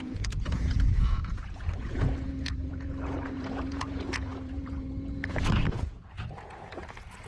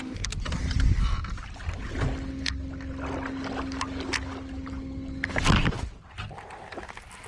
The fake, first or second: first